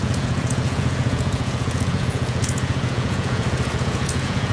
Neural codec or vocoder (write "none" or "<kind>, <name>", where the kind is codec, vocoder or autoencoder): vocoder, Vocos